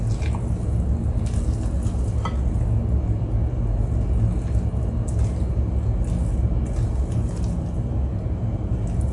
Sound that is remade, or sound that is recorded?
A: recorded